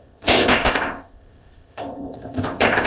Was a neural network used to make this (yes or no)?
yes